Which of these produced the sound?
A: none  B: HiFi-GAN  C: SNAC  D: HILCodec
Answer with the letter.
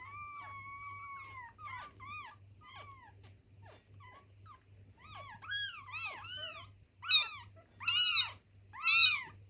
A